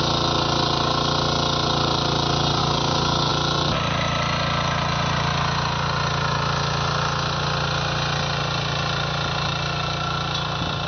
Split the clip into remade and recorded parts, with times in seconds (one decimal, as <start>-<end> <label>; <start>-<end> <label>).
0.0-2.6 recorded; 2.6-3.3 remade; 3.3-10.9 recorded